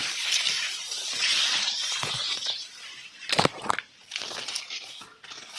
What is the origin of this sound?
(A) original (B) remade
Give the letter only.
B